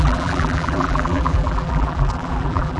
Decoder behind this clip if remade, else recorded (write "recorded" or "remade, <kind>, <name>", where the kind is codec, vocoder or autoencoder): remade, vocoder, BigVGAN v2